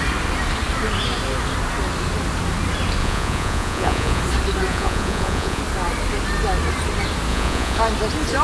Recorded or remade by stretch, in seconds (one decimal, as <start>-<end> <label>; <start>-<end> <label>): 0.0-3.0 recorded; 3.0-4.2 remade; 4.2-4.7 recorded; 4.7-5.6 remade; 5.6-7.3 recorded; 7.3-7.8 remade; 7.8-8.4 recorded